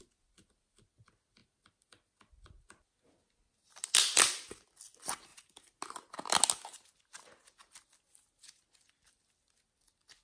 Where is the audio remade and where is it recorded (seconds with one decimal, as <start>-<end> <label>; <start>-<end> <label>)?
0.0-10.2 recorded